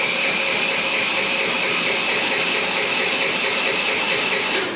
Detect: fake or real real